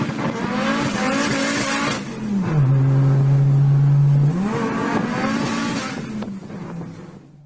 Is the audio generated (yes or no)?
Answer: no